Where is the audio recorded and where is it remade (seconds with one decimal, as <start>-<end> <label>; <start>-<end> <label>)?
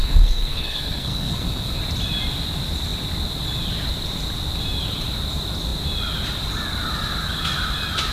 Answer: 0.0-1.8 remade; 1.8-8.1 recorded